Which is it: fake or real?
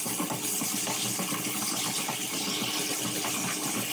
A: real